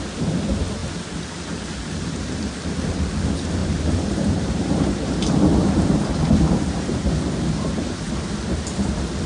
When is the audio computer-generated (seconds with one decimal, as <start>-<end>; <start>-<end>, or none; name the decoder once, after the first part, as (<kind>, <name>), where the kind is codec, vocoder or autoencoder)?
3.6-8.1 (vocoder, BigVGAN v2)